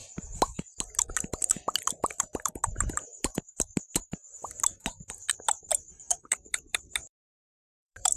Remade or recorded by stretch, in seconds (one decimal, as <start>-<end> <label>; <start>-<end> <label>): 0.0-2.0 recorded; 2.0-3.3 remade; 3.3-5.3 recorded; 5.3-8.2 remade